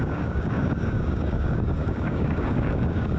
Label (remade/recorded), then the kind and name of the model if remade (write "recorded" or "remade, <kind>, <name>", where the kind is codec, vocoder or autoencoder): remade, codec, DAC